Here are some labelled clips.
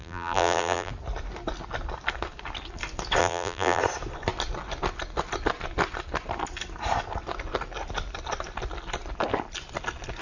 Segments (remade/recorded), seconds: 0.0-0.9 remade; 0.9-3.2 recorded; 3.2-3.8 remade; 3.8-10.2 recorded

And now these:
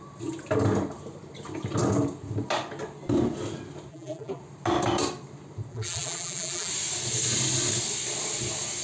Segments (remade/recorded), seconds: 0.0-3.9 recorded; 3.9-4.4 remade; 4.4-5.7 recorded; 5.7-6.7 remade; 6.7-8.8 recorded